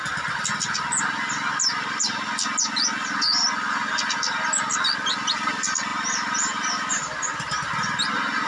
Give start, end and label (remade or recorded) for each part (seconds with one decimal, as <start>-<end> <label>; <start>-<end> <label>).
0.0-8.5 recorded